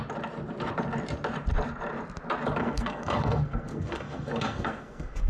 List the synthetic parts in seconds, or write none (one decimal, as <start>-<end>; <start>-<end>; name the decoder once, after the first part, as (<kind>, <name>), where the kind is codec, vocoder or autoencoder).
2.6-5.3 (codec, SNAC)